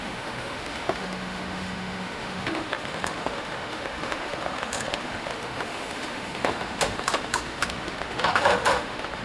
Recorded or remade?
remade